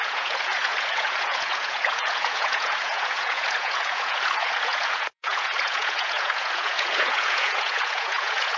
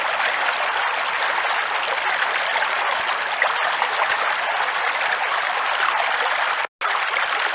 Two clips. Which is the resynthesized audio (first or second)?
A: first